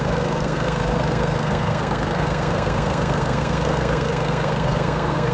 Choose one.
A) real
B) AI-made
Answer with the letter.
B